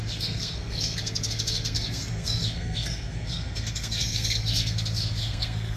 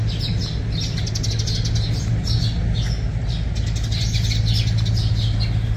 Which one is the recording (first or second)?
second